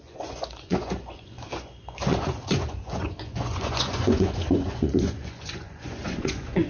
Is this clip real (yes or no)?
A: no